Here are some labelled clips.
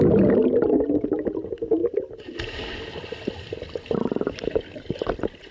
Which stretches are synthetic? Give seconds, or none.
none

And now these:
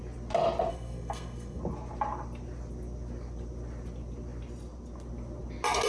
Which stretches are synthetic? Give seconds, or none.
0.7-1.6 (codec, SNAC)